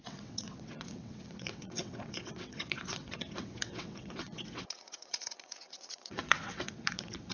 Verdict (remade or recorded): remade